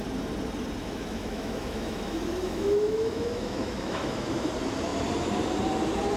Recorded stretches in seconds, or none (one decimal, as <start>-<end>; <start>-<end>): 0.0-0.8; 4.5-6.2